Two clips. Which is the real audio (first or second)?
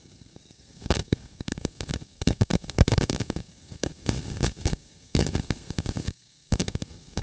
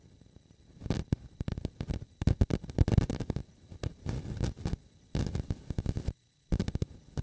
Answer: second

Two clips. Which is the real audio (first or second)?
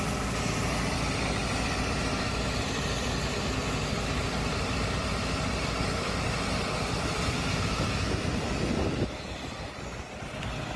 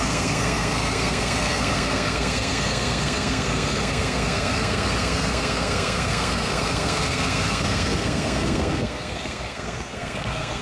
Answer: first